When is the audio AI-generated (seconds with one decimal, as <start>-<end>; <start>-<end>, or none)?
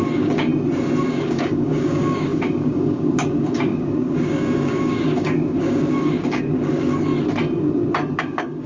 0.0-0.5; 1.0-7.1; 8.2-8.7